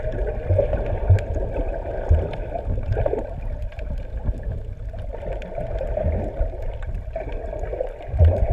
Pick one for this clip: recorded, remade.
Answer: recorded